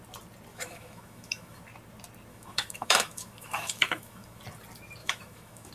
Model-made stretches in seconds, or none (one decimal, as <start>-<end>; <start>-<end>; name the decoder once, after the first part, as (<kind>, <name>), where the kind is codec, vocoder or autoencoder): 0.5-1.6 (autoencoder, DAC-VAE); 2.3-4.4; 5.0-5.7